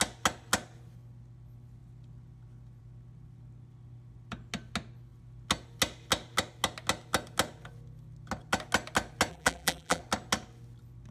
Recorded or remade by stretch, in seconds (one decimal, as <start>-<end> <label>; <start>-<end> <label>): 0.0-9.3 recorded; 9.3-10.0 remade; 10.0-11.1 recorded